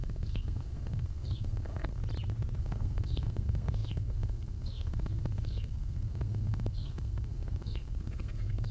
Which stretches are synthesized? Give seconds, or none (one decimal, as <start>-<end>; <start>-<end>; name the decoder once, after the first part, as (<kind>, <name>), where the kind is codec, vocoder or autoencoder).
0.0-2.0 (codec, SNAC); 2.6-8.7